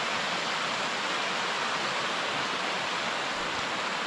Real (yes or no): yes